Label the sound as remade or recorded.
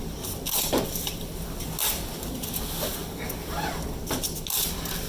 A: recorded